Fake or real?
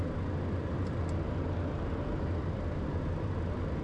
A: real